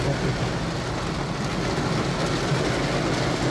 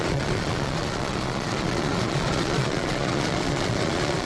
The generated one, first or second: second